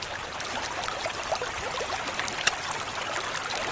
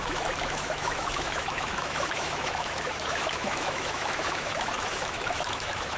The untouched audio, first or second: first